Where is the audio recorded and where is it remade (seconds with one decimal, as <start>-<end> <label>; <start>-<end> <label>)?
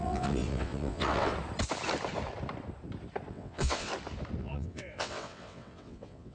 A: 0.0-1.3 remade; 1.3-3.3 recorded; 3.3-3.9 remade; 3.9-4.4 recorded; 4.4-6.3 remade